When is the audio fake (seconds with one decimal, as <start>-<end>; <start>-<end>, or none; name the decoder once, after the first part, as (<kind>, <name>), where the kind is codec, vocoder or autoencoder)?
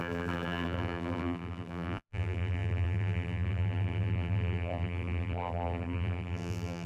0.0-6.9 (vocoder, BigVGAN v2)